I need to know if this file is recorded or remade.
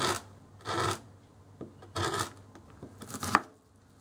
recorded